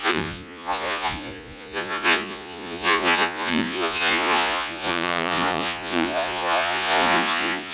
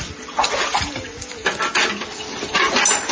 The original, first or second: second